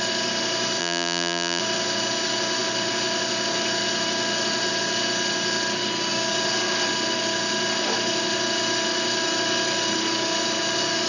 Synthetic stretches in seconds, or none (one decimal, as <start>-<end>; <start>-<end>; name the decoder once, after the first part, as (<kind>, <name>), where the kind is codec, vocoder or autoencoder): 0.8-1.6 (vocoder, BigVGAN v2)